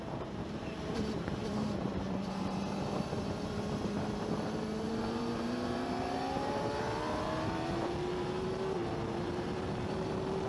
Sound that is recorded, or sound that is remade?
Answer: remade